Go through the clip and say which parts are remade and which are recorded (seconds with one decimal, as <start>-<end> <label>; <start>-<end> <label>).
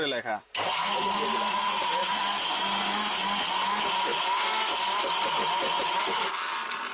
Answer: 0.0-0.7 recorded; 0.7-2.2 remade; 2.2-6.9 recorded